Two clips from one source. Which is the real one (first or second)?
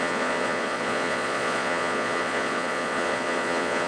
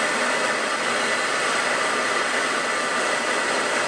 second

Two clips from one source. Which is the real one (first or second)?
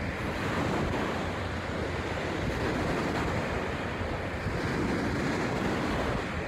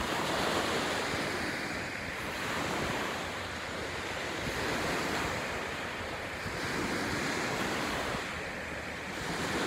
first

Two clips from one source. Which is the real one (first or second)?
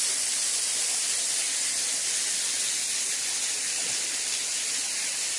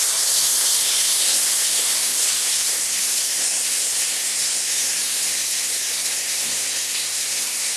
first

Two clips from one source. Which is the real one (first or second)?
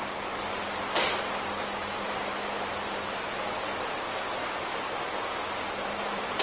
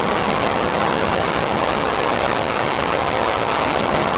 first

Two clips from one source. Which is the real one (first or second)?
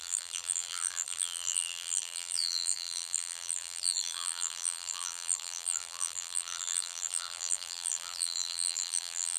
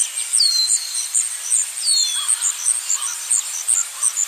second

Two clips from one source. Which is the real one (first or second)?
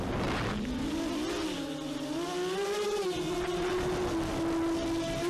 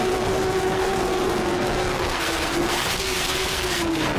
first